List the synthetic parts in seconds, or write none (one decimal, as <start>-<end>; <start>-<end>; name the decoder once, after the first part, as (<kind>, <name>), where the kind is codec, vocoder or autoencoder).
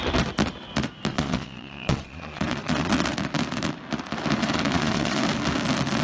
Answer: 1.1-2.9 (vocoder, Vocos); 4.4-5.2